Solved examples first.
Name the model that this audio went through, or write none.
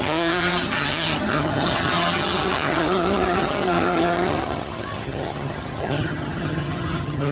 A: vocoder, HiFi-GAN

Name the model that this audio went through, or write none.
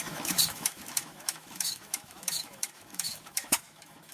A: autoencoder, DAC-VAE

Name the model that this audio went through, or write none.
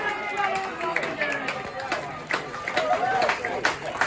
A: none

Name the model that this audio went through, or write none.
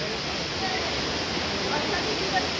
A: none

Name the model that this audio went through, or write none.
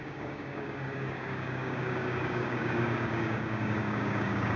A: codec, DAC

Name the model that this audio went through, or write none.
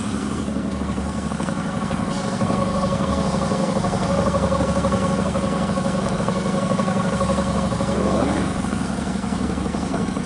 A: codec, SNAC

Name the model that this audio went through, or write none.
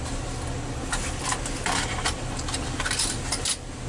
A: none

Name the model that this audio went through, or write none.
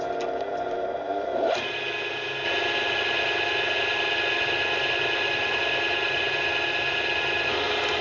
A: none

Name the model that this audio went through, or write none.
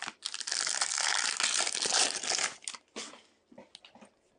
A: none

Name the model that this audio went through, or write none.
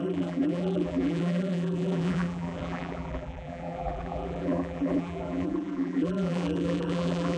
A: vocoder, BigVGAN v2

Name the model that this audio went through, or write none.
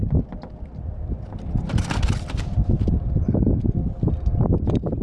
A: none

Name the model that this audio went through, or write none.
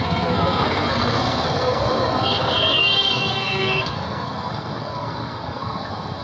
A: codec, SNAC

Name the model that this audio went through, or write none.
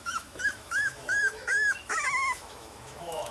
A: autoencoder, DAC-VAE